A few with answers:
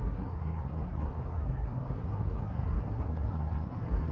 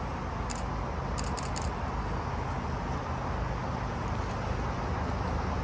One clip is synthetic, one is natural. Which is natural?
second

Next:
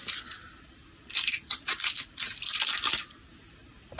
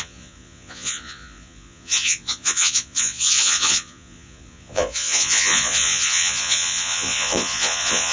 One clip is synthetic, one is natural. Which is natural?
first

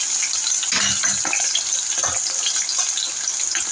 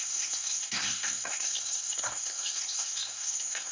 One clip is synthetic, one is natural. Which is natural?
first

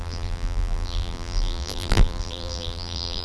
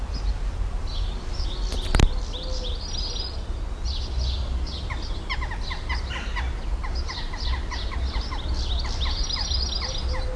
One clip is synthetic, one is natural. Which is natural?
second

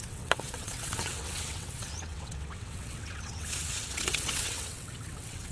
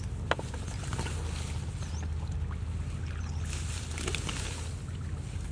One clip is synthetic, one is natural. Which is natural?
second